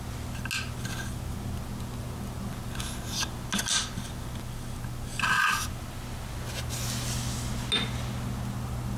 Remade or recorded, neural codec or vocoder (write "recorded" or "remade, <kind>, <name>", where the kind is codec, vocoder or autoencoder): recorded